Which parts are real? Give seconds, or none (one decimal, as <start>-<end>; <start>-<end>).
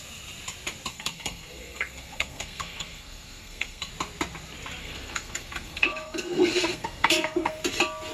0.0-0.9; 3.9-4.8; 7.6-8.1